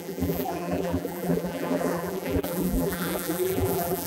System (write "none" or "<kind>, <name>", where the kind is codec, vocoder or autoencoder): vocoder, BigVGAN v2